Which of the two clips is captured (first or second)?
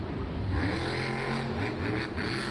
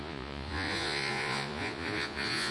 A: first